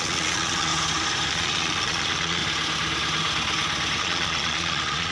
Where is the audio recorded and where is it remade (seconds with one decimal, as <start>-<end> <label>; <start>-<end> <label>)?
0.0-0.7 remade; 0.7-1.3 recorded; 1.3-2.4 remade; 2.4-4.0 recorded; 4.0-5.1 remade